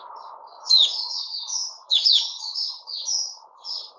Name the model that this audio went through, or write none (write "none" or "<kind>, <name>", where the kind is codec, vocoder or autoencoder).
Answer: vocoder, Vocos